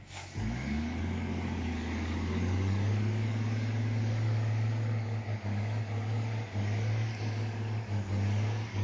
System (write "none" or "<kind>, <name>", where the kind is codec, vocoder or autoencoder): codec, DAC